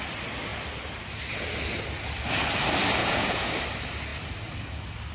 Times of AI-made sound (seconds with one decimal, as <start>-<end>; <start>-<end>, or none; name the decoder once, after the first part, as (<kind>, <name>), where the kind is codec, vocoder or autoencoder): 3.0-3.5 (vocoder, Vocos)